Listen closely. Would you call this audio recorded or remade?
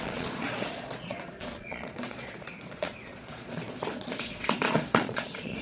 remade